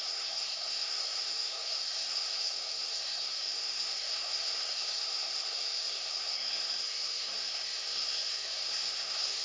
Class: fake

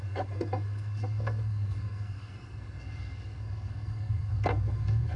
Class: fake